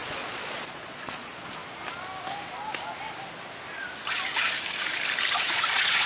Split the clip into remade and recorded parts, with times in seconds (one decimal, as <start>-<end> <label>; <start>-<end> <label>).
0.0-1.6 remade; 1.6-5.3 recorded; 5.3-6.1 remade